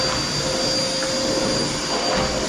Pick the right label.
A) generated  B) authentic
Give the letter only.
B